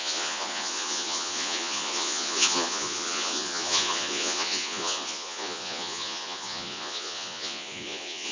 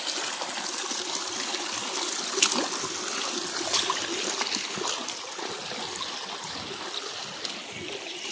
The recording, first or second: second